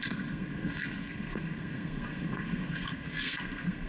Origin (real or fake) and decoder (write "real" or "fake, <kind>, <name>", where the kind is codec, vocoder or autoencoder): fake, codec, SNAC